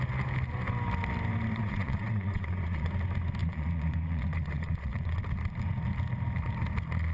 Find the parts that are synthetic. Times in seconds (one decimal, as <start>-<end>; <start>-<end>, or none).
1.6-2.9; 3.4-5.2

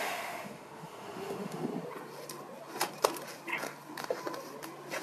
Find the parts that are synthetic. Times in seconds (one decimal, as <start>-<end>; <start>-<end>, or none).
0.0-1.7

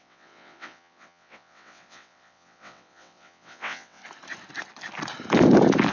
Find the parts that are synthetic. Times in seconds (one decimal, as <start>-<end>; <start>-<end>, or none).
0.0-4.0

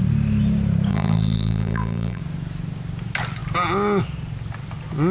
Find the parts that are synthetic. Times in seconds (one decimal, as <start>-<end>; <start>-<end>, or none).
0.9-2.2

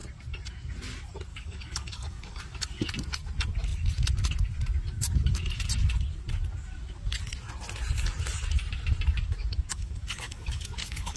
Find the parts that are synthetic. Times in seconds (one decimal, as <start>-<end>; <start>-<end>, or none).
1.3-2.4; 9.7-11.2

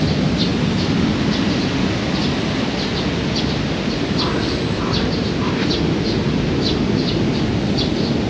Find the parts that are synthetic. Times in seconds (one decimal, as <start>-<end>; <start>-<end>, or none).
none

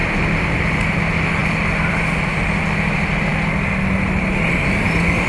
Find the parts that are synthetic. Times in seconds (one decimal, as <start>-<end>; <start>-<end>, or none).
none

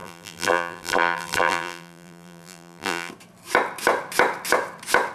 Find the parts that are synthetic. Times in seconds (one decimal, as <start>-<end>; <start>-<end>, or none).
0.0-3.1